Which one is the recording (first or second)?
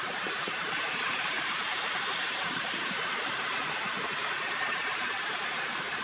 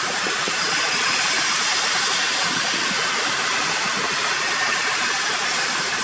second